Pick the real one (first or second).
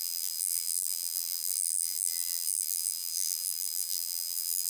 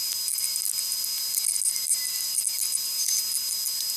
second